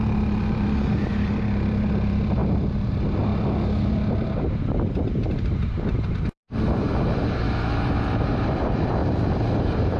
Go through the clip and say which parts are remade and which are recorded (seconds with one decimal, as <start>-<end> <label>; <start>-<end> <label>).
0.0-3.3 remade; 3.3-4.1 recorded; 4.1-9.0 remade; 9.0-9.6 recorded; 9.6-10.0 remade